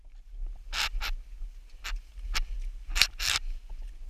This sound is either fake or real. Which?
real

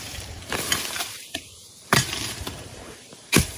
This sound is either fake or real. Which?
fake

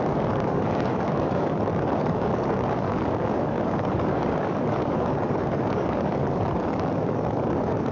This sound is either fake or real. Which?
fake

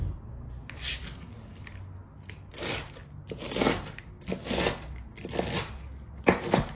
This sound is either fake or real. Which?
real